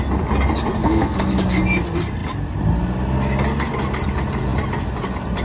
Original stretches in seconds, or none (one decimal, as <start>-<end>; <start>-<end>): 0.0-0.7; 1.4-5.4